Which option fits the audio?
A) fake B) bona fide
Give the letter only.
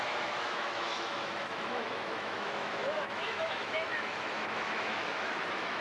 A